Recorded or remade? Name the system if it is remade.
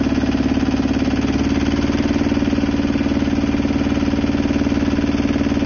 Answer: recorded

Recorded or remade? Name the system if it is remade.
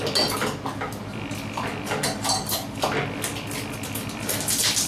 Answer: recorded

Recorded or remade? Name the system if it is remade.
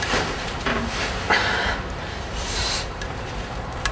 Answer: remade, vocoder, BigVGAN v2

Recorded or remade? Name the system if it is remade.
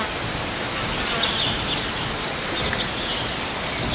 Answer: recorded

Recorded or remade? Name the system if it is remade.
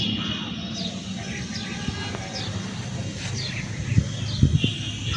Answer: recorded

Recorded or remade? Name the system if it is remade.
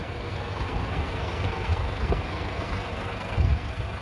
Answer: remade, codec, SNAC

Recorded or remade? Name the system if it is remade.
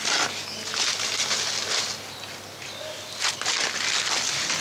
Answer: recorded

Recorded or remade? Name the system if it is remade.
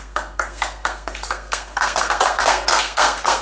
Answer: remade, codec, SNAC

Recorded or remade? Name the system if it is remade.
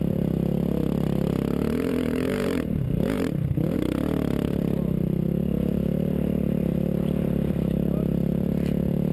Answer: remade, vocoder, BigVGAN v2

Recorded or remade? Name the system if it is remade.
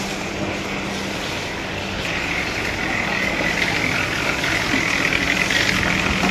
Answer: recorded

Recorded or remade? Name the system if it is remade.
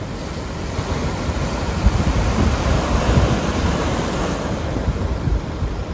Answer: remade, vocoder, BigVGAN v2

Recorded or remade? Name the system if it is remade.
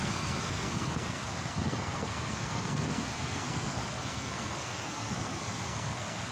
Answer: remade, codec, SNAC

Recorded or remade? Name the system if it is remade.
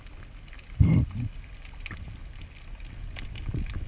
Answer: recorded